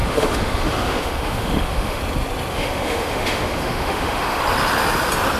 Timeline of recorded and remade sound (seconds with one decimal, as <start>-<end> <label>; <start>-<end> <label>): 0.0-2.0 remade; 2.0-2.5 recorded; 2.5-4.4 remade; 4.4-5.4 recorded